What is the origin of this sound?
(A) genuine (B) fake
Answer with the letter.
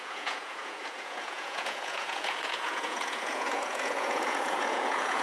B